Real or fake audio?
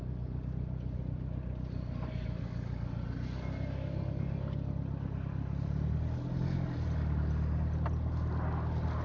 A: real